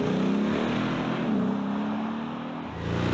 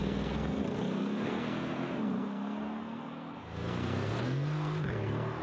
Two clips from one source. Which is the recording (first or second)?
first